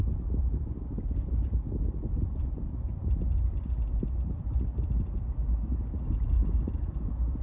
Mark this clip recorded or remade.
recorded